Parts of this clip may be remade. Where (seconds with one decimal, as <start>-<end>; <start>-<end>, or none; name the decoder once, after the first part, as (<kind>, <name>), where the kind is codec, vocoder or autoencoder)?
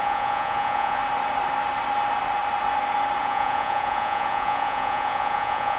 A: 0.0-1.0 (vocoder, Vocos); 3.2-5.8